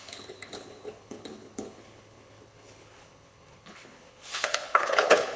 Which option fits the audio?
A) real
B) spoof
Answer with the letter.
B